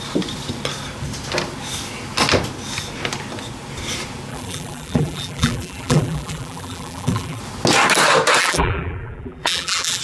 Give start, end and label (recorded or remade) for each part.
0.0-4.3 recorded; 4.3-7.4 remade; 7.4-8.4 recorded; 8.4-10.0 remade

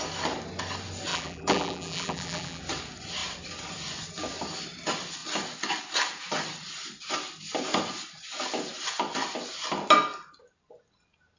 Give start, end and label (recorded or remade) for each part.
0.0-1.1 recorded; 1.1-2.6 remade; 2.6-11.4 recorded

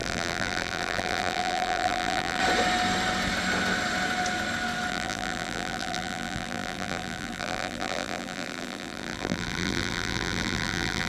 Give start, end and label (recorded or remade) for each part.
0.0-2.4 remade; 2.4-4.9 recorded; 4.9-11.1 remade

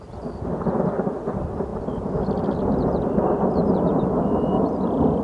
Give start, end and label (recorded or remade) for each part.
0.0-5.2 recorded

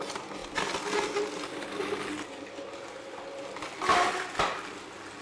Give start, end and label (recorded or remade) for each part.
0.0-5.2 recorded

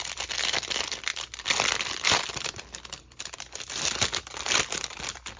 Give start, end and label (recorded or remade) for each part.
0.0-5.4 remade